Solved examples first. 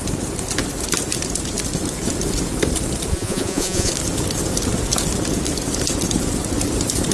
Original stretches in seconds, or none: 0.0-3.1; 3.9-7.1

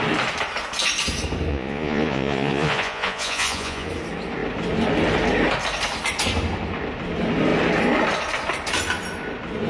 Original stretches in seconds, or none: 0.0-1.5; 3.9-9.7